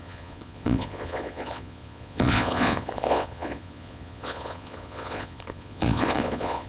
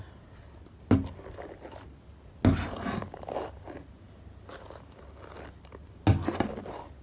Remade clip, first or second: first